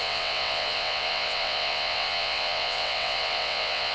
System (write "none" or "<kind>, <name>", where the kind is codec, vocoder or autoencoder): vocoder, WaveNeXt